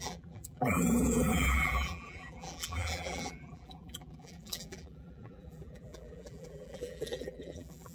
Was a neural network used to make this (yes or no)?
yes